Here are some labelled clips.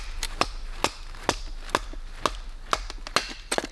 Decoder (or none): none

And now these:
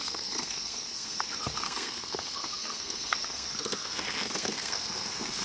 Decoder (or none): codec, SNAC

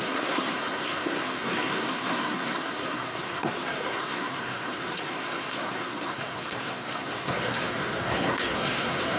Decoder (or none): codec, SNAC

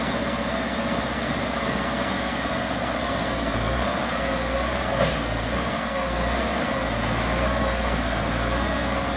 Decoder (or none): codec, SNAC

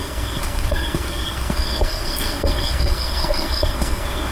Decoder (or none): codec, SNAC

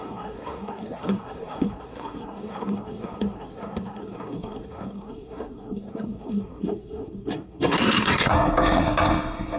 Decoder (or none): codec, SNAC